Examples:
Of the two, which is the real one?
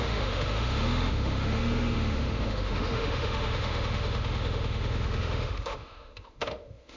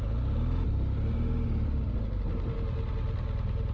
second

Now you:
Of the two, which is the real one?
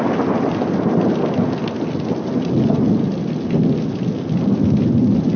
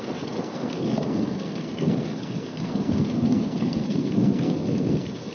first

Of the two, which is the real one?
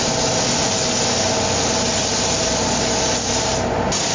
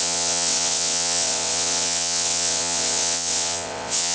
first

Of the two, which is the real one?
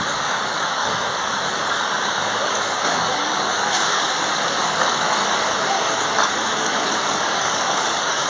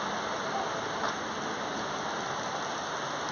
second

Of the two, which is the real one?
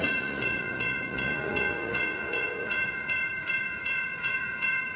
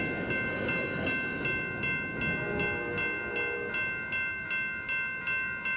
second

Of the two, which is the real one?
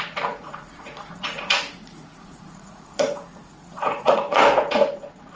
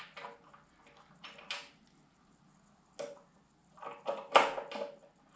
second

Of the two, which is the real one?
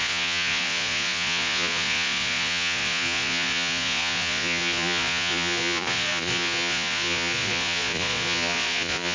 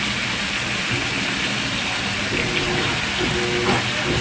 second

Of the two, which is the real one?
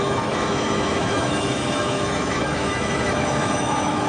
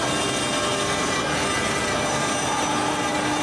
second